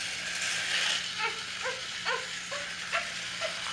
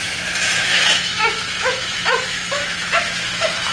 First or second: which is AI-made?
second